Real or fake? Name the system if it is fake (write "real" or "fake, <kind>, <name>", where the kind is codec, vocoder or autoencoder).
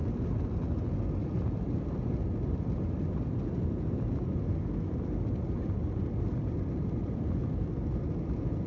real